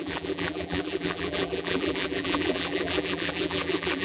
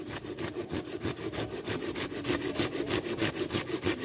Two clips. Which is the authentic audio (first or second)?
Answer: second